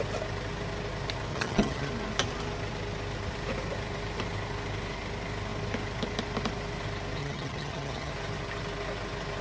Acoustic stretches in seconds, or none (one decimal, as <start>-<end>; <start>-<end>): 0.0-1.3; 1.9-7.2; 8.1-9.4